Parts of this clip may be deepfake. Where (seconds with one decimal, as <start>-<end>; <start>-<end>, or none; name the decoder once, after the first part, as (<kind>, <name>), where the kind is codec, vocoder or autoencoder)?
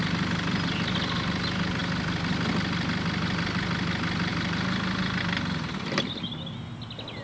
none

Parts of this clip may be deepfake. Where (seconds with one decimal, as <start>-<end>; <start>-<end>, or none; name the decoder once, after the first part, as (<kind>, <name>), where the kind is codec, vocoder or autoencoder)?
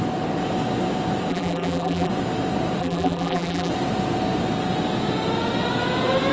1.3-2.1 (vocoder, BigVGAN v2); 2.8-3.7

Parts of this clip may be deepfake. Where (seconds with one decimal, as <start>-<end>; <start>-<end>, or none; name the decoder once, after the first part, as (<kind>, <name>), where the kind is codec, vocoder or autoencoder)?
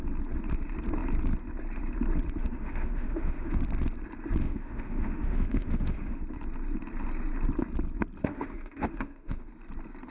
2.4-3.6 (autoencoder, DAC-VAE); 4.4-6.2; 8.2-9.5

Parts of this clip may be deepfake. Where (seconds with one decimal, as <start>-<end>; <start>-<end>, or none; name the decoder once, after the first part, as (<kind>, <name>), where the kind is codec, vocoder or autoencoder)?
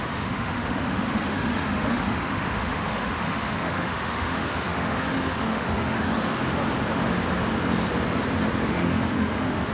0.0-6.4 (autoencoder, DAC-VAE); 8.7-9.7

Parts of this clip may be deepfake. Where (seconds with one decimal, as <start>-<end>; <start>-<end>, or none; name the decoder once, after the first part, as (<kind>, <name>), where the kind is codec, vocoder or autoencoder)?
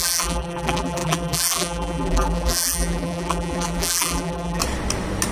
0.0-4.6 (vocoder, BigVGAN v2)